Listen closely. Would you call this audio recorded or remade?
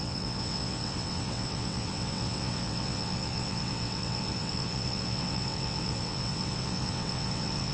remade